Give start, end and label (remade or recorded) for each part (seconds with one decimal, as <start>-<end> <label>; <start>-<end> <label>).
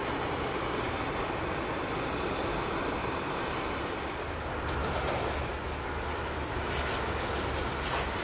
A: 0.0-2.5 remade; 2.5-3.0 recorded; 3.0-4.2 remade; 4.2-8.2 recorded